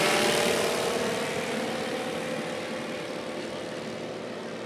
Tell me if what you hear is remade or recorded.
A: recorded